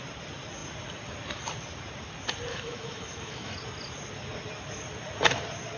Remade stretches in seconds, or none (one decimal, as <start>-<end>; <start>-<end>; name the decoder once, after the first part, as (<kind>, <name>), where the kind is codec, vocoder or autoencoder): 2.5-3.5 (autoencoder, DAC-VAE)